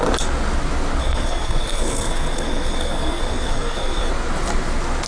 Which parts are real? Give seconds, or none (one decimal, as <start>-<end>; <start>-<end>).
0.0-1.0; 4.1-5.1